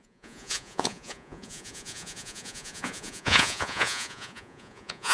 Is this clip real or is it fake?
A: fake